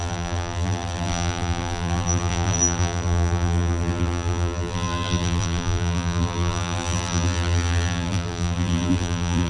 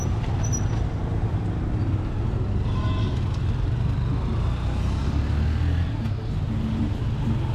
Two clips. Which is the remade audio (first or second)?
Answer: first